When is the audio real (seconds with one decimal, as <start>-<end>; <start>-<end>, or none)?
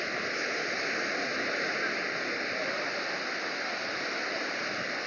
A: 0.0-5.1